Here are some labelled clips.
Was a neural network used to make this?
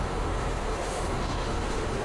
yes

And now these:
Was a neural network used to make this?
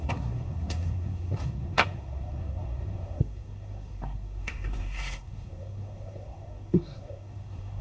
yes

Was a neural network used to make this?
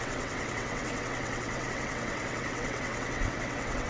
yes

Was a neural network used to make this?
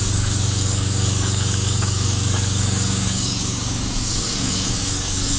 yes